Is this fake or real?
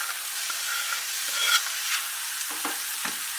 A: real